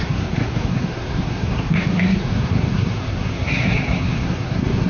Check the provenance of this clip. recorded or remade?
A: remade